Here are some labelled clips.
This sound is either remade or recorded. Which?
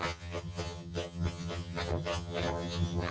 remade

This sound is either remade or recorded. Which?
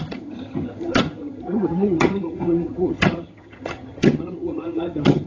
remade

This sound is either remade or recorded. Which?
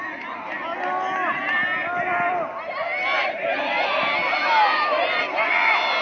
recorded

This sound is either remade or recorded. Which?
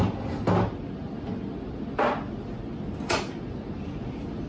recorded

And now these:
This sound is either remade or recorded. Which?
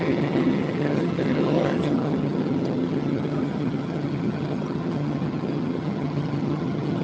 remade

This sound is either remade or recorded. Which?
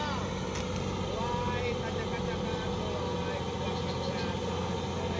recorded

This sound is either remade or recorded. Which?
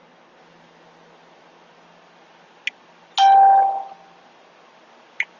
recorded